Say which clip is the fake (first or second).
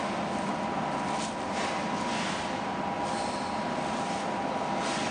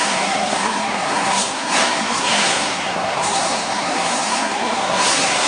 second